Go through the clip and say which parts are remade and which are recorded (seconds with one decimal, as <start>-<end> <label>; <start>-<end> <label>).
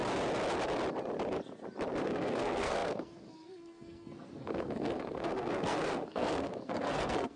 0.0-2.0 recorded; 2.0-7.4 remade